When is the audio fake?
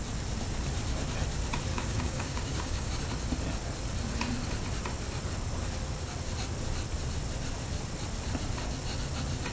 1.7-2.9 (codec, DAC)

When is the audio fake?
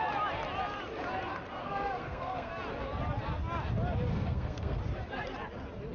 1.6-2.5 (codec, SNAC); 4.1-4.8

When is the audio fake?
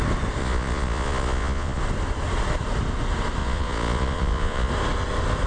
0.4-1.8 (vocoder, Vocos); 3.4-4.7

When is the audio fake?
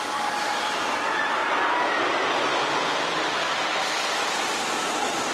0.0-1.4 (vocoder, BigVGAN v2); 4.6-5.3